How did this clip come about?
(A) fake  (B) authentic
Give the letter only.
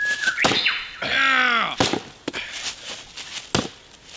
B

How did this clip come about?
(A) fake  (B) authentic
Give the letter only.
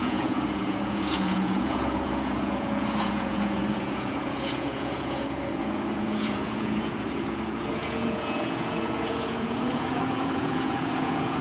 A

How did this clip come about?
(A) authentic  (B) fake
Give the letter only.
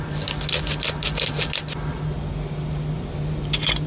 A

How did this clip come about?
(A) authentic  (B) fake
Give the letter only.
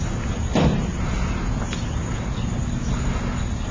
A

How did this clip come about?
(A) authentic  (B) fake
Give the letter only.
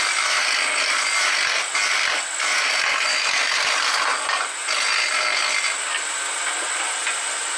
A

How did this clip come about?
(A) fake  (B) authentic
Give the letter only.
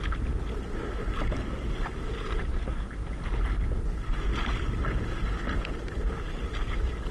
B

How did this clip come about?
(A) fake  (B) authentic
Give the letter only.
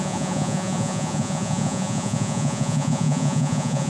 A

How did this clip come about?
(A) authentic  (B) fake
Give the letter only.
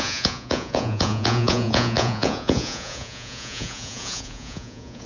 B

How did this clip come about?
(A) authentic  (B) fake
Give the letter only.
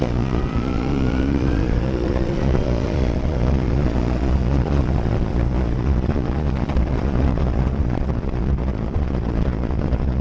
B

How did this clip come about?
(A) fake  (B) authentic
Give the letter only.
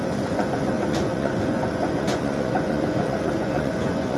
A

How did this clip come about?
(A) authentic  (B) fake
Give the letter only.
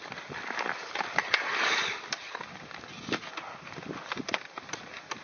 A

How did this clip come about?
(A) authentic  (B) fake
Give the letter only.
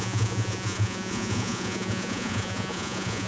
B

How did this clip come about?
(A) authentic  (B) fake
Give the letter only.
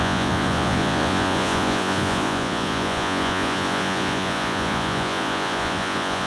B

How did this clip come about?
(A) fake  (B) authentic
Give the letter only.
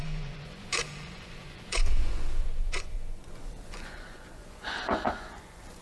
A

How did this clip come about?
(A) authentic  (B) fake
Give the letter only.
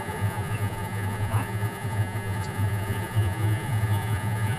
B